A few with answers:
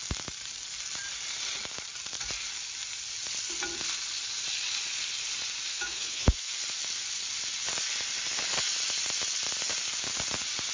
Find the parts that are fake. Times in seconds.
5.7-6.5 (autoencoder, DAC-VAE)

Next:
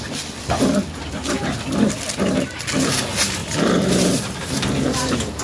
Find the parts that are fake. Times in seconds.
3.4-5.4 (vocoder, BigVGAN v2)

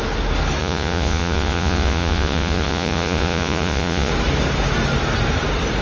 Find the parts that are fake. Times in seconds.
0.6-4.1 (vocoder, Vocos)

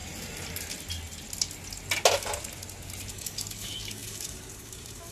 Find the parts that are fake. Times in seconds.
3.1-5.1 (codec, DAC)

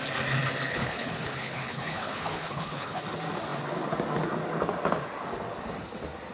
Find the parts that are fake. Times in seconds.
0.7-3.0 (codec, HILCodec)

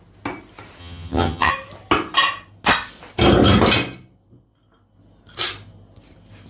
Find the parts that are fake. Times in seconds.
0.8-1.5 (vocoder, HiFi-GAN)

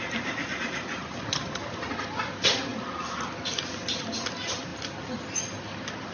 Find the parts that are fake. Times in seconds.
none

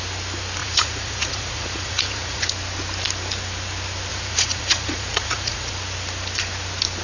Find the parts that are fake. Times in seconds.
0.6-2.5 (vocoder, Vocos); 4.1-5.7